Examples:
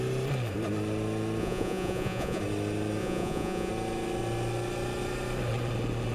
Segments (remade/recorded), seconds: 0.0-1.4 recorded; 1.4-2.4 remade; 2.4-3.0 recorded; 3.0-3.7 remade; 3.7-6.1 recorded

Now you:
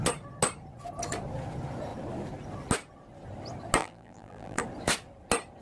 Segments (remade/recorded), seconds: 0.0-3.8 recorded; 3.8-4.6 remade; 4.6-5.6 recorded

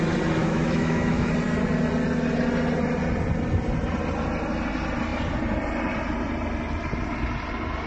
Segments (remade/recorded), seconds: 0.0-0.4 recorded; 0.4-1.3 remade; 1.3-7.9 recorded

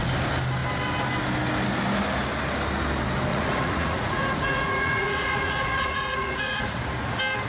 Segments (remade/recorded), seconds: 0.0-3.3 recorded; 3.3-6.8 remade; 6.8-7.5 recorded